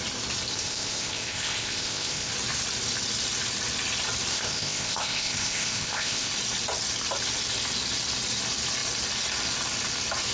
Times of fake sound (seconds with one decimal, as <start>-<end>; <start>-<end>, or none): 0.5-2.3; 4.3-6.3